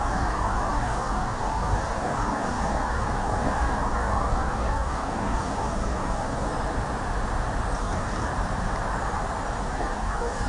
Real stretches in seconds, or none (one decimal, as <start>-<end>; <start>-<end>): 6.5-7.8; 8.3-9.6